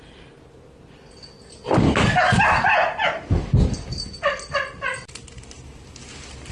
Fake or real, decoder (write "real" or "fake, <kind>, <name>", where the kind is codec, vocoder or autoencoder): real